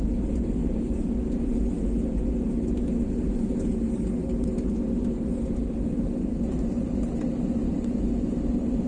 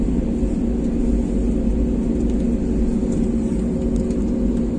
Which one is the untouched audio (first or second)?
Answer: second